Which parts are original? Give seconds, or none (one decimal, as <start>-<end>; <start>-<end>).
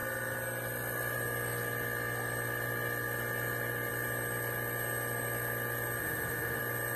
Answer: 0.0-6.0; 6.6-7.0